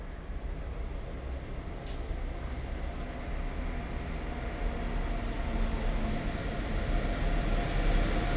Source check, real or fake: real